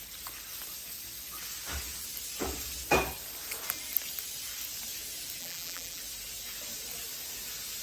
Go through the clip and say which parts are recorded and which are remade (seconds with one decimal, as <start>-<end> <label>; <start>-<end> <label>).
0.0-5.4 recorded; 5.4-6.0 remade; 6.0-7.8 recorded